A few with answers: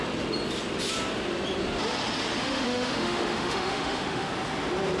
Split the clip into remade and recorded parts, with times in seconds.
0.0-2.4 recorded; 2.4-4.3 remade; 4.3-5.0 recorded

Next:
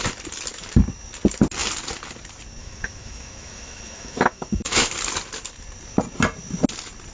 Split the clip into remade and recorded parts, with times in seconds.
0.0-2.6 recorded; 2.6-4.9 remade; 4.9-7.1 recorded